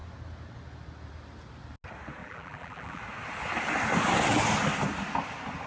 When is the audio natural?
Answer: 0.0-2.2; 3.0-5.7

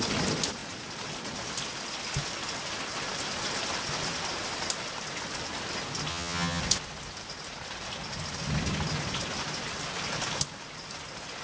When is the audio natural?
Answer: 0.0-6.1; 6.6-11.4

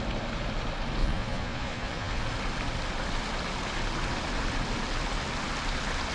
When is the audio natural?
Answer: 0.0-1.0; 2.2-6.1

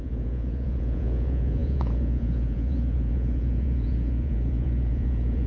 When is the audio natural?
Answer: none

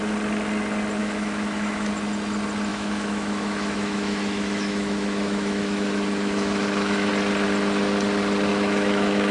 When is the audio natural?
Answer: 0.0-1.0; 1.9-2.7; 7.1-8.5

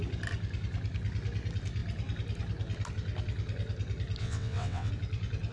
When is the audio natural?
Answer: 0.0-4.2; 4.9-5.5

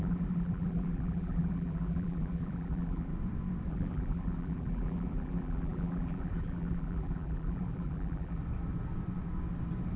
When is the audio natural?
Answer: 3.1-3.7; 8.4-10.0